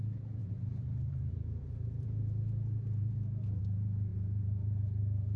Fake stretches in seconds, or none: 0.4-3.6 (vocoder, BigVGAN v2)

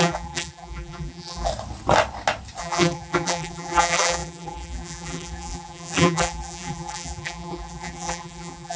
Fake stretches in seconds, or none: 0.0-1.5 (vocoder, BigVGAN v2); 2.6-8.8

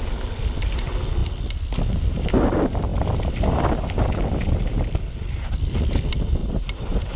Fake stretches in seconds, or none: 6.4-7.2 (vocoder, BigVGAN v2)

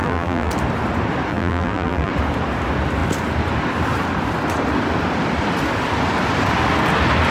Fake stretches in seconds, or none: 0.0-0.5 (vocoder, BigVGAN v2); 1.3-2.1

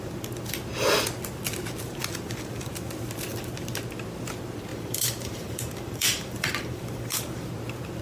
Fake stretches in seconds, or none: 4.7-7.5 (vocoder, BigVGAN v2)

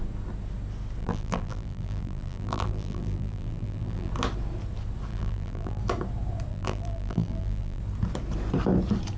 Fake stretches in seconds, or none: 1.0-4.1 (vocoder, BigVGAN v2); 5.1-5.8; 6.5-7.8

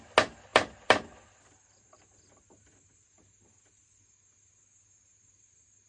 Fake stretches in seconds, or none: 0.5-4.0 (vocoder, BigVGAN v2)

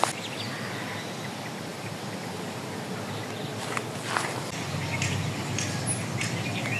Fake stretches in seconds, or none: 1.7-5.8 (vocoder, BigVGAN v2)